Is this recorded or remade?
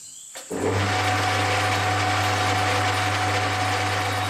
recorded